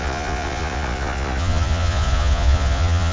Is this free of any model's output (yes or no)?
no